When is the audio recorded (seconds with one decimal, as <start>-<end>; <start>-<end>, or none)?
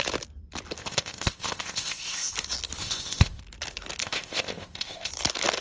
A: 0.0-0.8; 2.3-2.8; 3.4-4.0; 5.1-5.6